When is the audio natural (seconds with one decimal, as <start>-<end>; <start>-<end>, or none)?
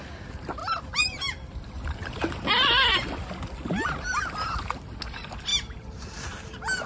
0.0-0.6; 2.2-5.5